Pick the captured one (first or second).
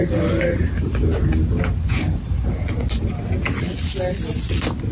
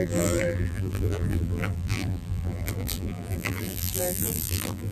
first